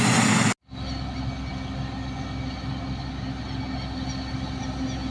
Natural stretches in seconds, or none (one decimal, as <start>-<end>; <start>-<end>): 0.0-5.1